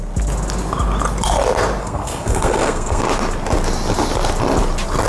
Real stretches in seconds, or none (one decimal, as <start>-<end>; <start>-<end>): 0.0-1.8; 3.0-5.1